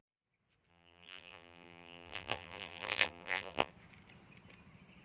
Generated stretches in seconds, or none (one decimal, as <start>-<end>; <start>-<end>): 0.7-3.7